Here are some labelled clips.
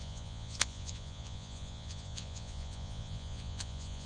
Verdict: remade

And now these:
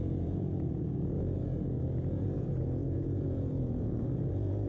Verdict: remade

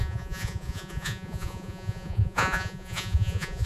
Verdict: remade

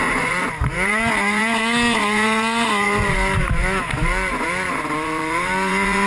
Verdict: remade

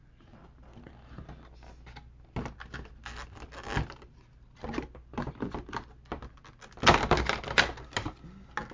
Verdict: recorded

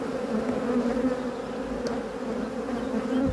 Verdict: recorded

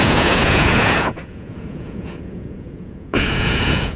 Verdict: remade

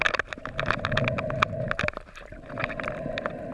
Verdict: recorded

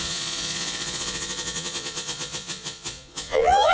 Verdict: remade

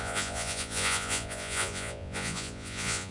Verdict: remade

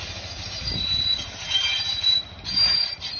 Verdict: recorded